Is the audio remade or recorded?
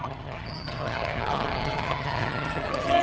remade